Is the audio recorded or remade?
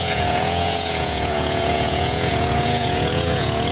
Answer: remade